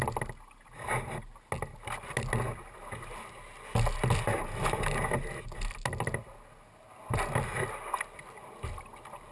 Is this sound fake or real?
real